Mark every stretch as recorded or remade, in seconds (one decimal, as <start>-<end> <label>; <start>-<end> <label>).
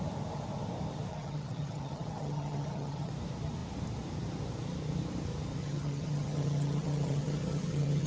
0.0-1.1 recorded; 1.1-3.1 remade; 3.1-5.6 recorded; 5.6-8.1 remade